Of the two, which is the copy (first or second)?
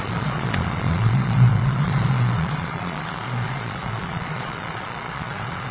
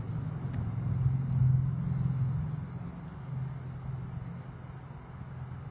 first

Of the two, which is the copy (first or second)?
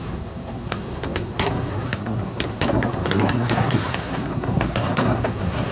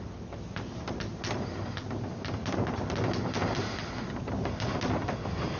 first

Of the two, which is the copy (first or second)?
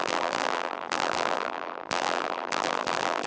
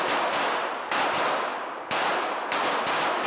first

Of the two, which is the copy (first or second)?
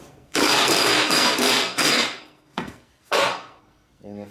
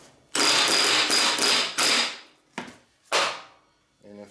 first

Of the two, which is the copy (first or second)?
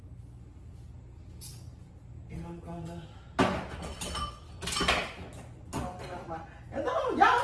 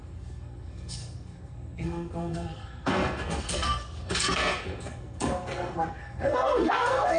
second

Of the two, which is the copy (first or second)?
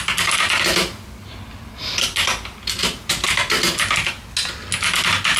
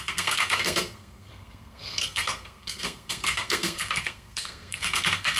second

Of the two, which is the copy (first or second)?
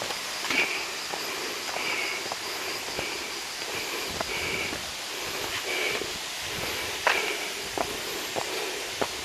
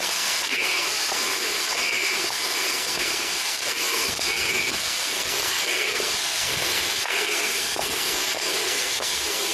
second